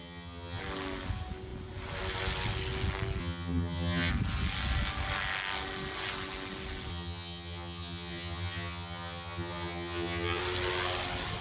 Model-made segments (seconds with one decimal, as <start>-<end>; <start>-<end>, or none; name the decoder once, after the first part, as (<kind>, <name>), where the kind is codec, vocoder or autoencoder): 0.0-0.6 (vocoder, HiFi-GAN); 3.2-4.1; 6.9-10.4